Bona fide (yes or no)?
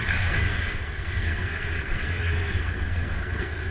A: no